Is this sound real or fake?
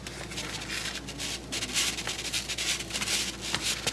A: real